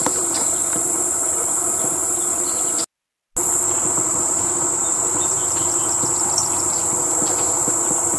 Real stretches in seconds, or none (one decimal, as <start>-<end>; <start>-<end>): 2.0-4.1